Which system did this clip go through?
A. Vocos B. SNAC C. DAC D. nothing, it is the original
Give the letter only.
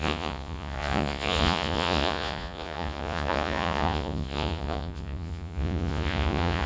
A